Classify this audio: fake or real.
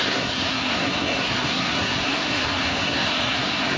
fake